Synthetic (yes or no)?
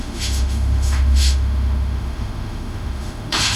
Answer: yes